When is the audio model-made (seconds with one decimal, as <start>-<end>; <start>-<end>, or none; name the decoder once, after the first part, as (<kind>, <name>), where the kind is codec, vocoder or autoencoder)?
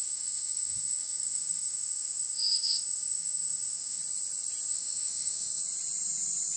0.0-4.0 (autoencoder, DAC-VAE); 4.7-5.6